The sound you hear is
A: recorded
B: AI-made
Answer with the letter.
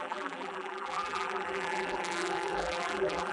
B